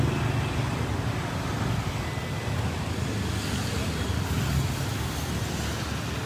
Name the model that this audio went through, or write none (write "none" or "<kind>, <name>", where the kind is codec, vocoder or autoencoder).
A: none